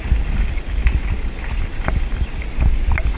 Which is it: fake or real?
real